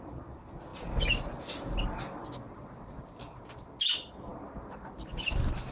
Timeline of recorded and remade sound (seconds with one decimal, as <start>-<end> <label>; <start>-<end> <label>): 0.0-5.7 recorded